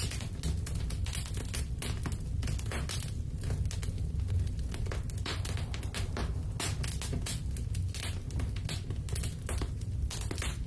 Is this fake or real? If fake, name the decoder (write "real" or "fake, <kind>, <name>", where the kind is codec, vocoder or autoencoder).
real